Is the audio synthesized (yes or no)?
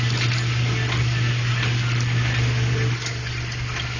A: no